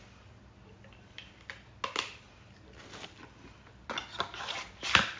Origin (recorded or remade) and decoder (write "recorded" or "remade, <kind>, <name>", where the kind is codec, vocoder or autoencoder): recorded